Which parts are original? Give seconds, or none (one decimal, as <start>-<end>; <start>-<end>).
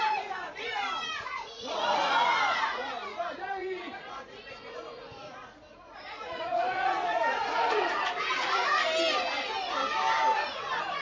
8.7-10.5